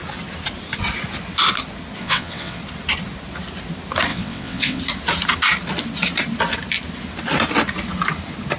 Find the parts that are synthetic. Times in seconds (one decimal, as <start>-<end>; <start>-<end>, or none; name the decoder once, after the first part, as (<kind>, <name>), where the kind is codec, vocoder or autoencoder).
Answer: 2.0-2.6 (vocoder, WaveNeXt); 4.1-4.8